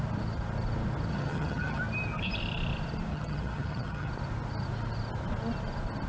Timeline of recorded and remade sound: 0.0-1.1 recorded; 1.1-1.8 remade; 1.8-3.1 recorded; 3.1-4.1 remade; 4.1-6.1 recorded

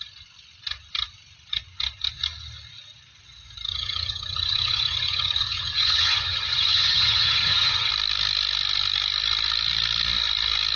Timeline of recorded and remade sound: 0.0-3.7 recorded; 3.7-7.9 remade; 7.9-10.8 recorded

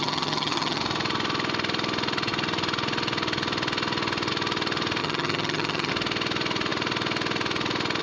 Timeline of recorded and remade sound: 0.0-0.8 remade; 0.8-5.0 recorded; 5.0-5.9 remade; 5.9-8.0 recorded

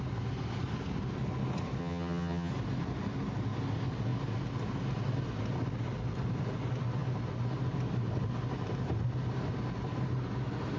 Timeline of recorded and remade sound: 0.0-1.8 recorded; 1.8-2.5 remade; 2.5-10.8 recorded

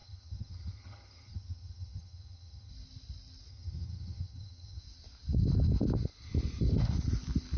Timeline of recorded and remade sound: 0.0-2.7 remade; 2.7-3.5 recorded; 3.5-4.8 remade; 4.8-7.6 recorded

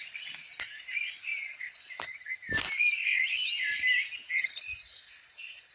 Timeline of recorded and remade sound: 0.0-5.7 recorded